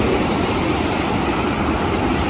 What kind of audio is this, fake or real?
real